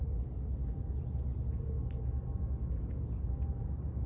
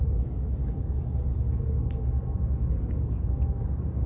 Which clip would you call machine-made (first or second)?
second